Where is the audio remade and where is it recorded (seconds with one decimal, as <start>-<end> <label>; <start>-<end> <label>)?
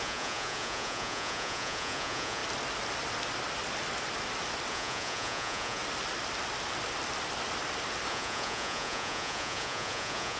0.0-2.4 remade; 2.4-4.7 recorded; 4.7-5.8 remade; 5.8-8.1 recorded; 8.1-10.4 remade